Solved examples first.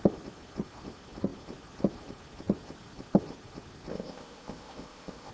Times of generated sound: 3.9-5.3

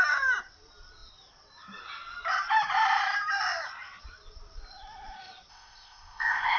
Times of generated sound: 5.5-6.6